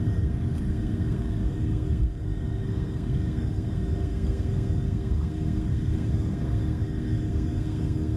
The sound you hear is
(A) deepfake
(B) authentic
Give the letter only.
A